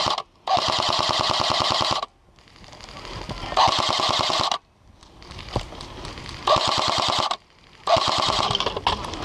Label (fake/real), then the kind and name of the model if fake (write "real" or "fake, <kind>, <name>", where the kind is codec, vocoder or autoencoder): real